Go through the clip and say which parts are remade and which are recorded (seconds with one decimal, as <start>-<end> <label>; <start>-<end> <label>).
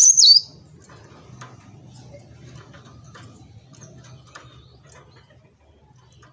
0.0-6.3 recorded